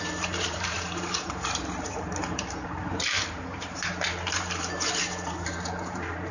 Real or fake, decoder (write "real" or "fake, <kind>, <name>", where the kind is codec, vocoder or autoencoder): fake, vocoder, BigVGAN v2